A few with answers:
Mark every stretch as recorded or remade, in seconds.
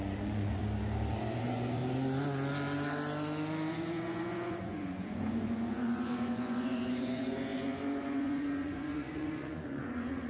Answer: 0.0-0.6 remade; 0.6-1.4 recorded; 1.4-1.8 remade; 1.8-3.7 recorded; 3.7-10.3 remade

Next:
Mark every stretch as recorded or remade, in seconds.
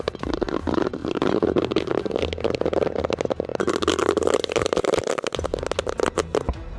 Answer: 0.0-6.8 recorded